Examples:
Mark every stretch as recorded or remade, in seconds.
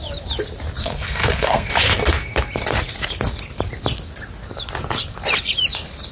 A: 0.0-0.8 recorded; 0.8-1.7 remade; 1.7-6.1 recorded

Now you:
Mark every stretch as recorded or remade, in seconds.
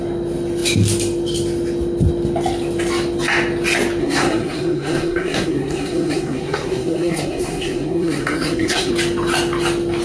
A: 0.0-4.0 recorded; 4.0-8.9 remade; 8.9-10.0 recorded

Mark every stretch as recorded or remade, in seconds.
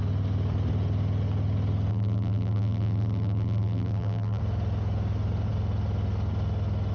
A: 0.0-1.9 recorded; 1.9-4.4 remade; 4.4-6.9 recorded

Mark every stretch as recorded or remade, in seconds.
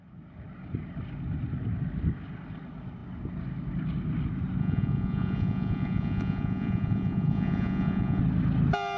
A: 0.0-4.6 recorded; 4.6-8.2 remade; 8.2-9.0 recorded